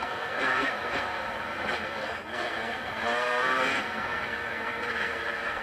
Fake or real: fake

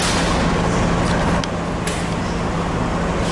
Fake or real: real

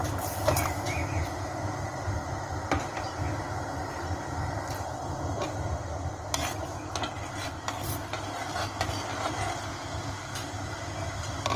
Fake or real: real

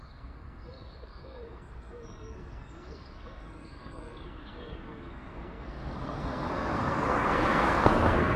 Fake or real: fake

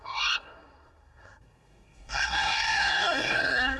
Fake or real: fake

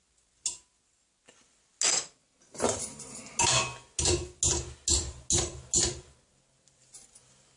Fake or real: real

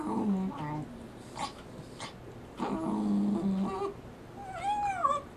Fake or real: real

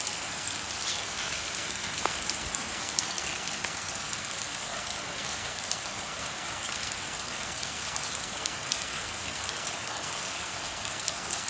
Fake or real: fake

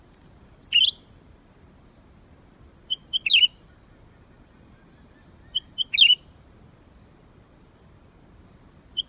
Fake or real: real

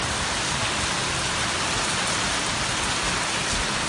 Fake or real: real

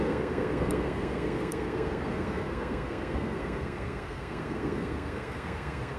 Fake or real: fake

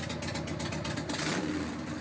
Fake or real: real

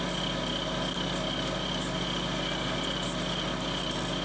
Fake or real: real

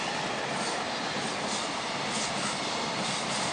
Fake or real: real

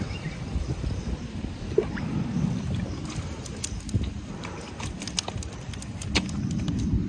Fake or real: real